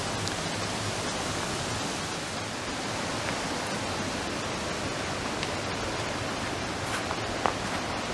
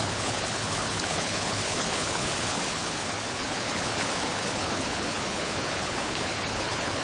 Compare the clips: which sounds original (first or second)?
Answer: first